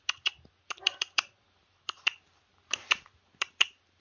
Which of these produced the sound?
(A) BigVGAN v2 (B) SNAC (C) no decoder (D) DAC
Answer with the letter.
C